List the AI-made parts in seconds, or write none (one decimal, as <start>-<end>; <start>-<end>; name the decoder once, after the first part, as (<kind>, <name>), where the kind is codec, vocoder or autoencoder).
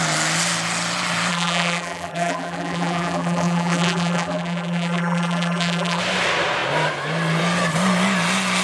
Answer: 1.3-6.0 (vocoder, BigVGAN v2)